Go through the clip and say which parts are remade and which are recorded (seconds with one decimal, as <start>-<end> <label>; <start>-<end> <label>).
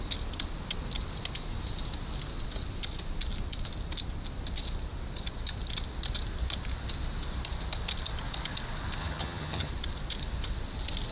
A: 0.0-9.0 recorded; 9.0-9.7 remade; 9.7-11.1 recorded